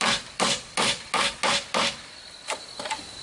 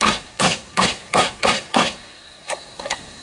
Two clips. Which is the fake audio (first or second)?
second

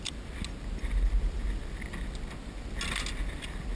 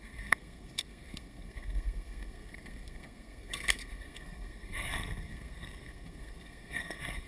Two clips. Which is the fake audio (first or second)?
second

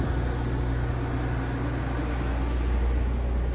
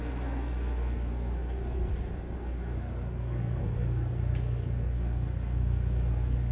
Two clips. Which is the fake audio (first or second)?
second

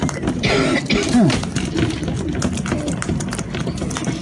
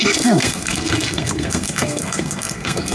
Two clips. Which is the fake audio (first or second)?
second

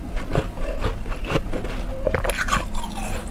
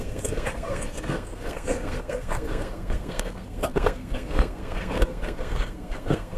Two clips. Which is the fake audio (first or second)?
second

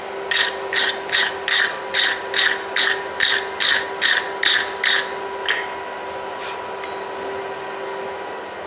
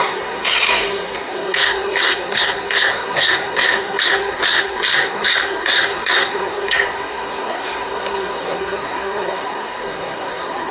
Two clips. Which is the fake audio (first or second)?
second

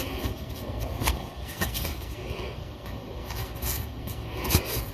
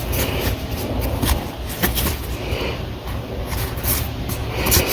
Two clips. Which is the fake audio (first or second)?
first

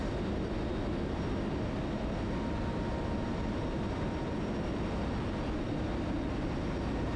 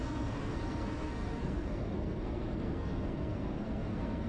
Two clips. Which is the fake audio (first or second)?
second